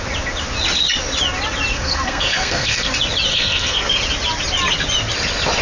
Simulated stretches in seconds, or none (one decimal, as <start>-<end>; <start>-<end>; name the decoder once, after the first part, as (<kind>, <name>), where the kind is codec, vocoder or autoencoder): 1.7-2.9 (codec, SNAC); 3.3-4.0